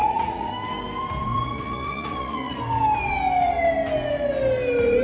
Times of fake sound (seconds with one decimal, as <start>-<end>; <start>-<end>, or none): 0.0-0.5; 1.3-2.6